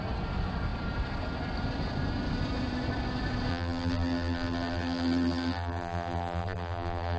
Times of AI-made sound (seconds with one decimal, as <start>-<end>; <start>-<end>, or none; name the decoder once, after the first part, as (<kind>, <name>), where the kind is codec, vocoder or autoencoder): 3.5-7.2 (vocoder, BigVGAN v2)